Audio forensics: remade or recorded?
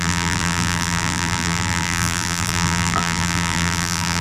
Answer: remade